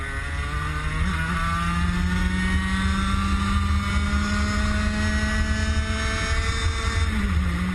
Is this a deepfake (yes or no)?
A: no